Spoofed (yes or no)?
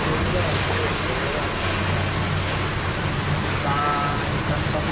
no